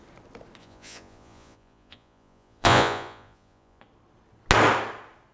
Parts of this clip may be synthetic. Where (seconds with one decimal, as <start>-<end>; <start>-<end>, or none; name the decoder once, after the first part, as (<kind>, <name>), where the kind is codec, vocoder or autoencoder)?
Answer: 0.6-3.8 (vocoder, Vocos)